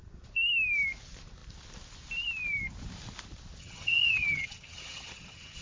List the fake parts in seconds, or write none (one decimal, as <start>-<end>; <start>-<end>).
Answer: 3.6-5.6